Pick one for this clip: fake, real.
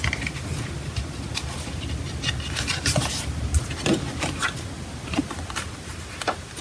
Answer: real